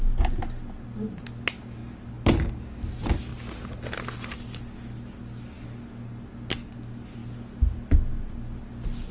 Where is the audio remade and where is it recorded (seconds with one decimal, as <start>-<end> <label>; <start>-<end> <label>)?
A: 0.0-9.1 recorded